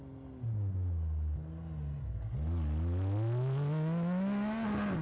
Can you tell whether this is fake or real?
real